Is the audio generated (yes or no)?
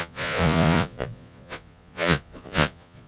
yes